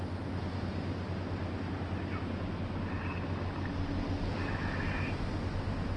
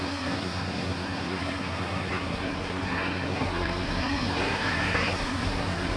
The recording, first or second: first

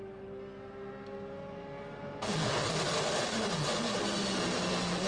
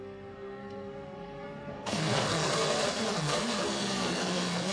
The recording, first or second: first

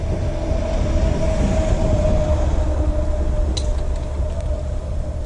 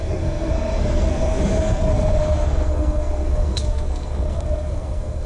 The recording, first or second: first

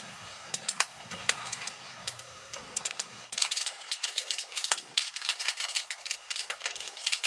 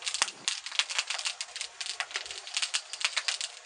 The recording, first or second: second